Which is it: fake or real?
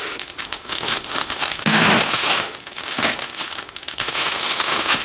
fake